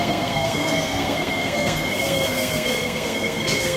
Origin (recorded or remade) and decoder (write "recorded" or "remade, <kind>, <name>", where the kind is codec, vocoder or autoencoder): remade, codec, SNAC